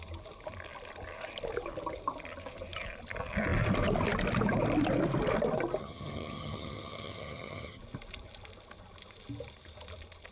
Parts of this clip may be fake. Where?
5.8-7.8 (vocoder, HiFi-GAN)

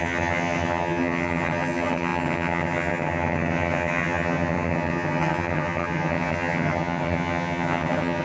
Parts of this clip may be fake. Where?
0.0-8.2 (vocoder, HiFi-GAN)